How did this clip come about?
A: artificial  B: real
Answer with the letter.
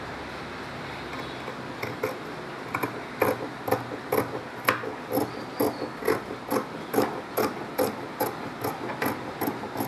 B